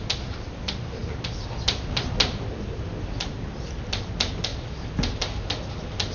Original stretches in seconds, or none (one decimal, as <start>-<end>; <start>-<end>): 0.0-6.1